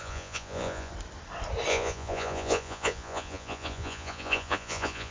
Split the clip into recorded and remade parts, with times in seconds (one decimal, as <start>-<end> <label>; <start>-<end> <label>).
0.0-0.9 remade; 0.9-1.7 recorded; 1.7-5.1 remade